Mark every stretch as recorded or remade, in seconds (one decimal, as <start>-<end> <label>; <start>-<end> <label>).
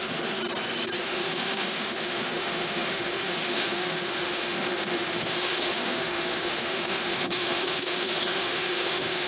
0.0-0.4 remade; 0.4-1.0 recorded; 1.0-9.3 remade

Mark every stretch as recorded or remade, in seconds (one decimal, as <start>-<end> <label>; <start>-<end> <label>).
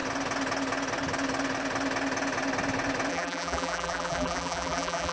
0.0-3.1 recorded; 3.1-5.1 remade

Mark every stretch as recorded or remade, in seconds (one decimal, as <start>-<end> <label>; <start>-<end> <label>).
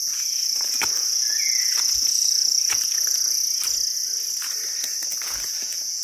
0.0-3.4 remade; 3.4-5.1 recorded; 5.1-6.0 remade